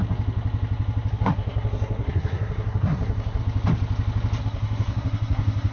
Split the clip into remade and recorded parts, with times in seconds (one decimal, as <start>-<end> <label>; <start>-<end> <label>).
0.0-1.1 recorded; 1.1-3.4 remade; 3.4-4.4 recorded; 4.4-5.7 remade